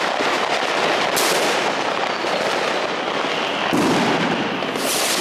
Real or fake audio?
real